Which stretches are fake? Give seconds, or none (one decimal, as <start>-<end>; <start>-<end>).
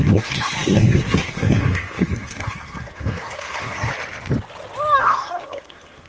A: 0.0-3.9; 5.0-6.1